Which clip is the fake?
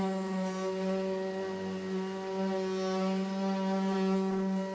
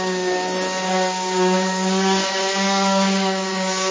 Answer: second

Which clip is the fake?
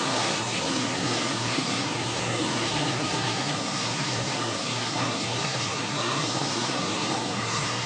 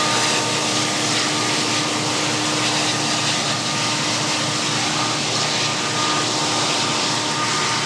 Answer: first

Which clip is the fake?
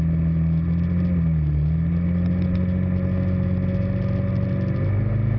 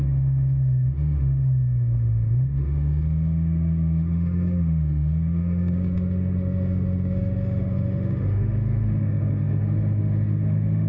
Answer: second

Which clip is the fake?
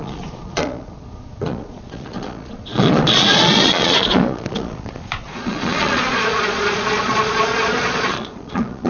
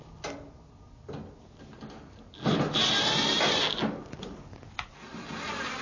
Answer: first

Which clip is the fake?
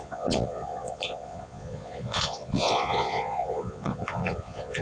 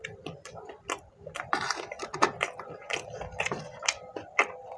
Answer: first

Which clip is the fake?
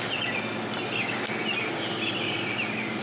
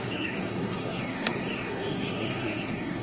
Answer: second